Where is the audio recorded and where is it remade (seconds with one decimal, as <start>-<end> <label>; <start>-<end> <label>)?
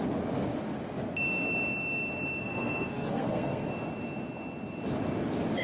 0.0-2.4 recorded; 2.4-3.7 remade; 3.7-5.6 recorded